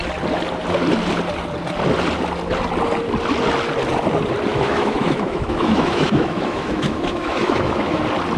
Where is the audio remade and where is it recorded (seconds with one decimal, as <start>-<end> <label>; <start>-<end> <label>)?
0.0-4.5 recorded; 4.5-8.0 remade; 8.0-8.4 recorded